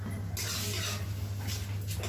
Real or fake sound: real